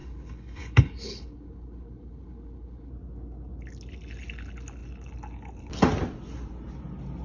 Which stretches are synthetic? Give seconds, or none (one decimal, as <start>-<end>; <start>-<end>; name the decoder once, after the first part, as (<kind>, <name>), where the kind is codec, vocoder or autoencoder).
0.0-2.9 (codec, HILCodec)